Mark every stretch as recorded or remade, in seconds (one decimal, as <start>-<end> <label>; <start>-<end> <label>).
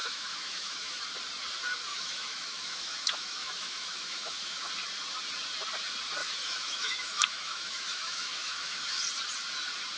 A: 0.0-1.0 remade; 1.0-1.9 recorded; 1.9-4.7 remade; 4.7-6.2 recorded; 6.2-9.0 remade; 9.0-10.0 recorded